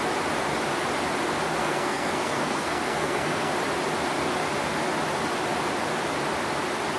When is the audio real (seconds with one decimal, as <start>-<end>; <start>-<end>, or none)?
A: 0.0-1.6; 3.5-7.0